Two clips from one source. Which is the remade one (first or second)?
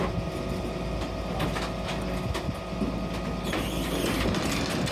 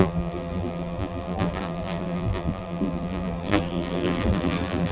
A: second